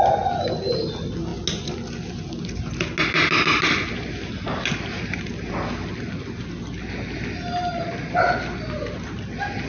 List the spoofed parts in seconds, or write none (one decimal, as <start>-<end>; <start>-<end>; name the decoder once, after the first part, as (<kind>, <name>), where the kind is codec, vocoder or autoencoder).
none